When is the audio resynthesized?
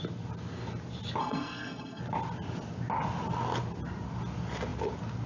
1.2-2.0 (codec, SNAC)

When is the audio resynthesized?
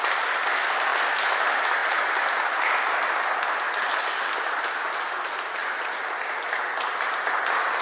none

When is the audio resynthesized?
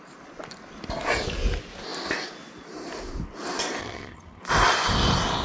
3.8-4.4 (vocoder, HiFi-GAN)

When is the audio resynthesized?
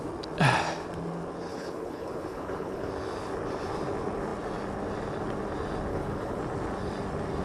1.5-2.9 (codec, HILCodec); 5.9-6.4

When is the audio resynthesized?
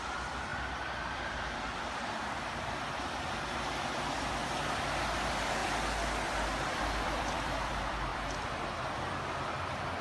0.0-5.6 (vocoder, BigVGAN v2); 6.8-10.0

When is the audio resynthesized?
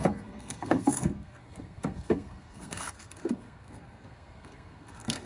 0.0-5.3 (codec, SNAC)